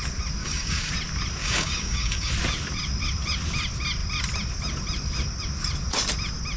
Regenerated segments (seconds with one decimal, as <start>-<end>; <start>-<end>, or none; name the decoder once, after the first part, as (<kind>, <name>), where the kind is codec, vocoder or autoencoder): 0.4-0.9 (codec, DAC); 1.4-2.3